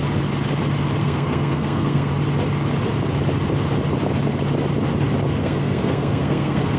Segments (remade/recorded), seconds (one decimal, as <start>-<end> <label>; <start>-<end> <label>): 0.0-1.0 recorded; 1.0-2.1 remade; 2.1-5.4 recorded; 5.4-6.8 remade